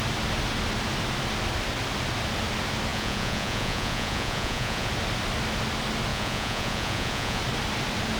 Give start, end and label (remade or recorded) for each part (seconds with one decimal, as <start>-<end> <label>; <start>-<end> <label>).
0.0-2.9 recorded; 2.9-4.9 remade; 4.9-6.1 recorded; 6.1-7.4 remade; 7.4-8.2 recorded